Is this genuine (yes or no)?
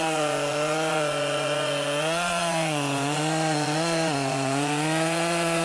no